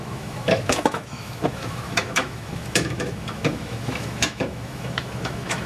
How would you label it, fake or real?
fake